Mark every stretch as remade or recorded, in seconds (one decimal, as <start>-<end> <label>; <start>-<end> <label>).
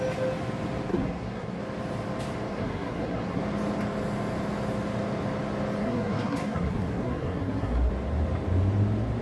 0.0-0.9 recorded; 0.9-1.6 remade; 1.6-2.5 recorded; 2.5-3.4 remade; 3.4-5.8 recorded; 5.8-7.9 remade; 7.9-9.2 recorded